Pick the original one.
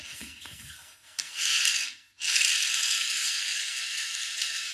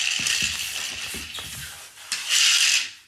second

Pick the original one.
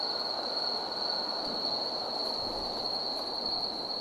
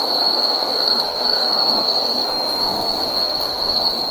first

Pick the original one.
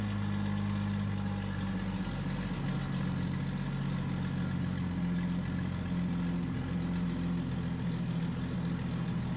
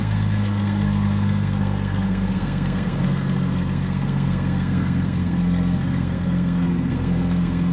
first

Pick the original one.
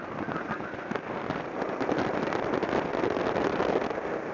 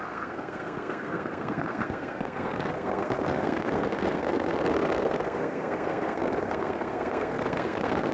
first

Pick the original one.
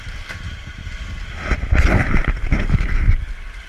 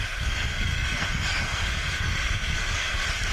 first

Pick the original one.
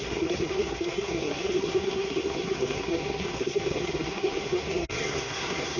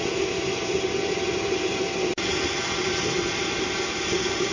second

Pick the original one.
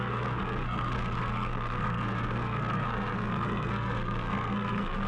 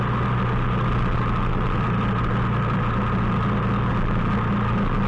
second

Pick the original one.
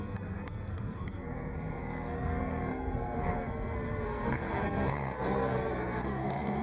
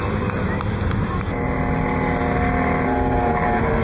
second